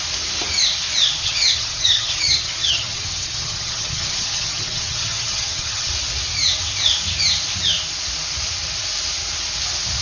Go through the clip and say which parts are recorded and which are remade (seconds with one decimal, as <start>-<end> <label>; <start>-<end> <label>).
0.0-1.2 recorded; 1.2-5.9 remade; 5.9-10.0 recorded